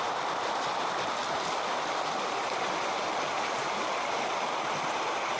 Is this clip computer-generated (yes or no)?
no